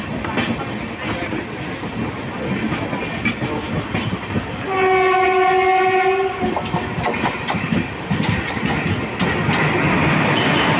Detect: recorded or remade recorded